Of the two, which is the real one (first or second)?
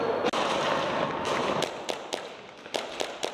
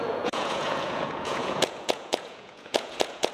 first